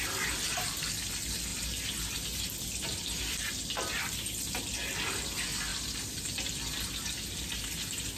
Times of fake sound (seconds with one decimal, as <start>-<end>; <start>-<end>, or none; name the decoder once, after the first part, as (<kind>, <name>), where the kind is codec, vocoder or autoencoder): none